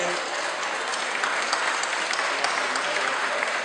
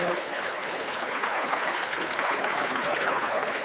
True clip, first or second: first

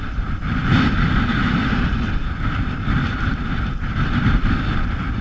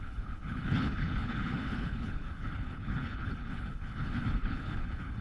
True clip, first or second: first